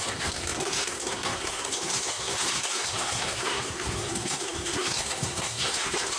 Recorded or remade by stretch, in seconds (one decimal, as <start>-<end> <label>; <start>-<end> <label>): 0.0-6.2 remade